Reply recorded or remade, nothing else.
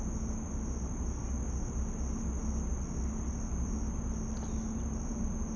recorded